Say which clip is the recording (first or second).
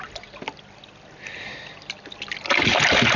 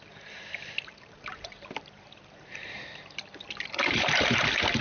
first